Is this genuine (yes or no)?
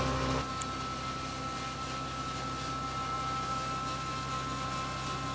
yes